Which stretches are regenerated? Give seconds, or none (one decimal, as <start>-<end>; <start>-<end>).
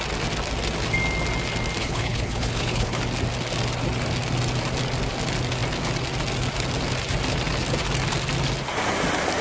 1.8-3.0